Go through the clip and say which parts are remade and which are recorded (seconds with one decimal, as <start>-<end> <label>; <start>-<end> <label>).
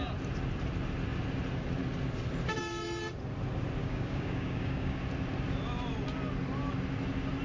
0.0-3.8 recorded; 3.8-5.0 remade; 5.0-7.4 recorded